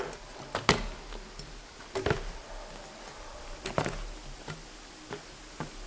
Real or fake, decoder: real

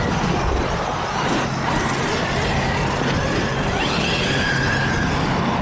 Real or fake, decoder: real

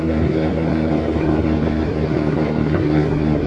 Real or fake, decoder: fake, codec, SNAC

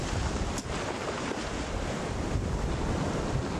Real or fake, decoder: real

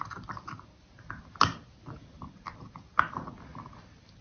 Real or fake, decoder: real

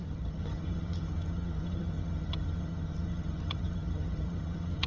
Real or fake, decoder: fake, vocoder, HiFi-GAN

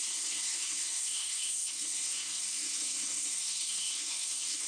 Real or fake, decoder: fake, codec, SNAC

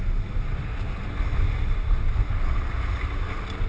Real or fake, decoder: real